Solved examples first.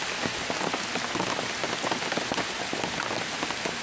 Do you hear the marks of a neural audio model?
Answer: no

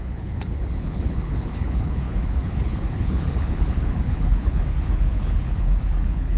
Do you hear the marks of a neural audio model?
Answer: yes